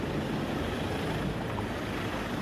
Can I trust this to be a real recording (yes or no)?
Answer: yes